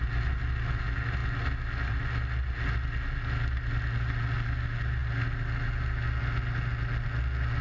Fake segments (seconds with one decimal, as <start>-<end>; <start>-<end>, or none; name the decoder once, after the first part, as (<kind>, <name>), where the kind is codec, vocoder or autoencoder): none